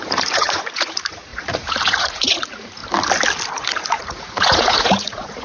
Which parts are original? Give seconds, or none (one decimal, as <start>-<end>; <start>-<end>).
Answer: 2.8-3.5